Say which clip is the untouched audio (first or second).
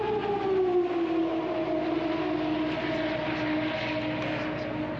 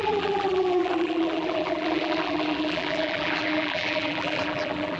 first